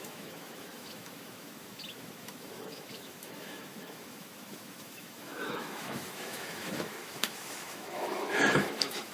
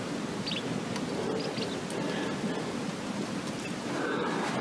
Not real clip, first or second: first